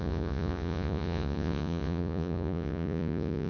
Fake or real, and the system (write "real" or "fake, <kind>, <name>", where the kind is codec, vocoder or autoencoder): fake, vocoder, Vocos